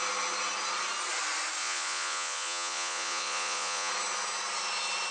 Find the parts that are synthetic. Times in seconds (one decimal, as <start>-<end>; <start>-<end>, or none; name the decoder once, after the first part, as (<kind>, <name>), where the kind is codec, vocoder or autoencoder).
1.6-3.9 (vocoder, Vocos)